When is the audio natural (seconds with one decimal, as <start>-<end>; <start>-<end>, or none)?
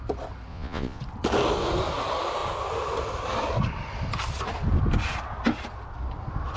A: 0.0-0.5; 1.0-6.6